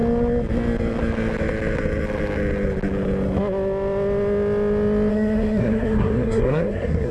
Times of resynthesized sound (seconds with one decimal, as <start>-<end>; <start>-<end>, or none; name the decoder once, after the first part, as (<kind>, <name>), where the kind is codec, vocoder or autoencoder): 5.1-7.1 (codec, SNAC)